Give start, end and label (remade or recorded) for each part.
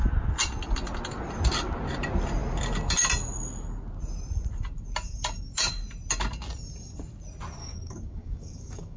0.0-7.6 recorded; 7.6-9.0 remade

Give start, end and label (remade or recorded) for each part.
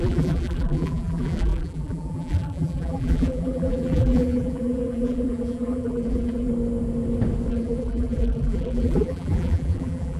0.0-6.5 remade; 6.5-7.5 recorded; 7.5-10.2 remade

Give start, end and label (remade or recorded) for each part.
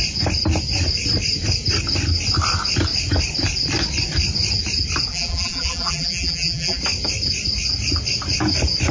0.0-5.1 recorded; 5.1-6.8 remade; 6.8-8.9 recorded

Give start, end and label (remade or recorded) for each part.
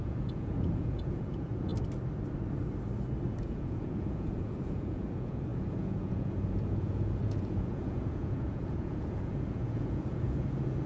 0.0-1.7 remade; 1.7-3.4 recorded; 3.4-10.9 remade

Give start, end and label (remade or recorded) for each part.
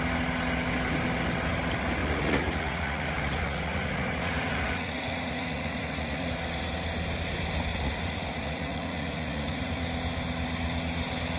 0.0-2.0 recorded; 2.0-6.3 remade; 6.3-7.7 recorded; 7.7-9.8 remade; 9.8-11.4 recorded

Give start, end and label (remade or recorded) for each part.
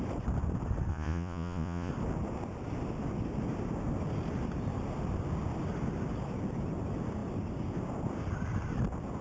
0.0-0.9 recorded; 0.9-1.9 remade; 1.9-9.2 recorded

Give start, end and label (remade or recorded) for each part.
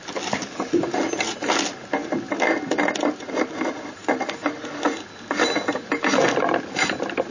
0.0-7.3 recorded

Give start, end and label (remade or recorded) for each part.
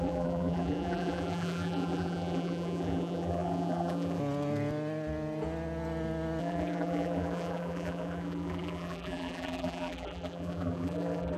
0.0-4.2 remade; 4.2-6.4 recorded; 6.4-11.4 remade